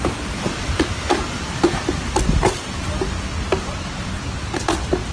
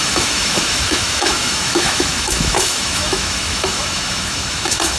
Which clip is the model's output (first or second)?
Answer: second